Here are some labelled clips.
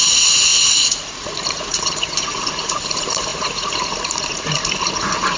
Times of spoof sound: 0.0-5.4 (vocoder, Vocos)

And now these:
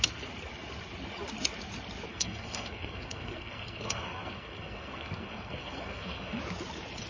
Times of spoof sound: 2.1-6.4 (codec, SNAC)